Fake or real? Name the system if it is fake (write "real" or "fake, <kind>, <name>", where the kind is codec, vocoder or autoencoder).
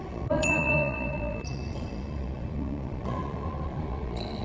fake, vocoder, Vocos